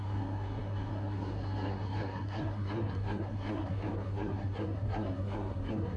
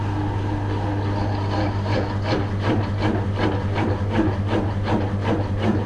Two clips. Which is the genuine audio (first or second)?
second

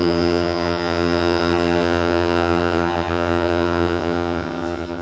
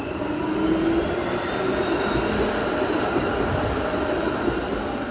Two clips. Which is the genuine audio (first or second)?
second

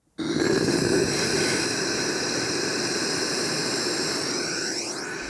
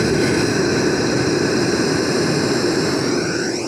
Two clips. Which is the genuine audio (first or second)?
second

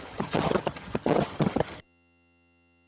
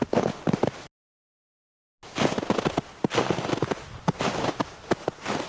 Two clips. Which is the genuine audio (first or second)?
second